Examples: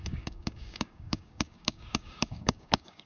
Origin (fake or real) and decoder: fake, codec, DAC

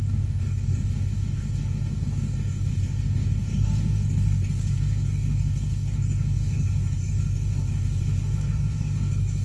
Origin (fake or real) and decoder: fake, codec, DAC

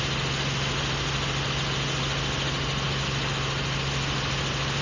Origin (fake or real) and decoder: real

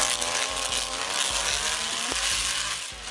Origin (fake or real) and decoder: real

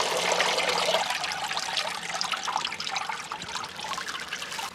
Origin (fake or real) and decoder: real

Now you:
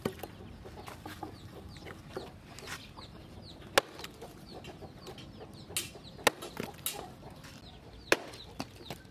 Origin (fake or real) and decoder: real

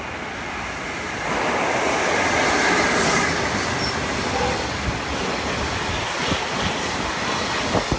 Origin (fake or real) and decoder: real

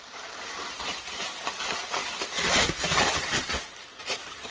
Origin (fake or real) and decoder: real